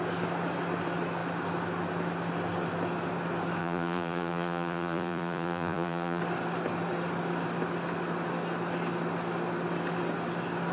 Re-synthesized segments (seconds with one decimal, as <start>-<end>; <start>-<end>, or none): 3.6-6.2